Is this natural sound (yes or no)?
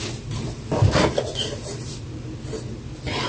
yes